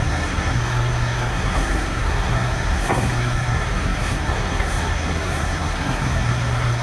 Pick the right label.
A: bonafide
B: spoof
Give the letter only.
B